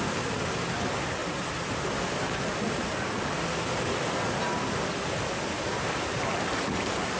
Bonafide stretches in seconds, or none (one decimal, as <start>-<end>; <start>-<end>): 0.0-7.2